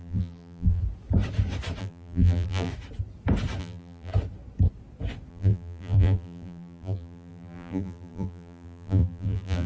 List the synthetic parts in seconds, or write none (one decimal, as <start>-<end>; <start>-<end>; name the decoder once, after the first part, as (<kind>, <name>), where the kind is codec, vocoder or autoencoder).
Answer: 0.0-0.8 (vocoder, BigVGAN v2); 1.8-2.7; 3.6-4.1; 5.3-9.7